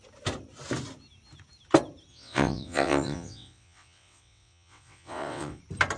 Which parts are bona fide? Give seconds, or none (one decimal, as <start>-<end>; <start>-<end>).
0.0-2.1; 5.6-6.0